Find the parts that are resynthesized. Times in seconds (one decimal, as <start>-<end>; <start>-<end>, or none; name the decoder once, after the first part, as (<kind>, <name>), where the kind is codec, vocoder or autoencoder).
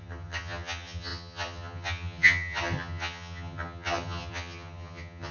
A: 0.0-5.3 (vocoder, HiFi-GAN)